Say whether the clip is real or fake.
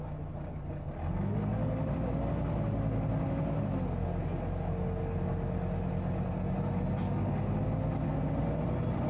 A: real